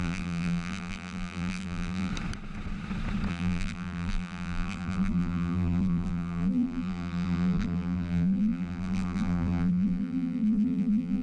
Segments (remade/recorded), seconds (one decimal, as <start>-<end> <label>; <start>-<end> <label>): 0.0-2.1 remade; 2.1-3.3 recorded; 3.3-11.2 remade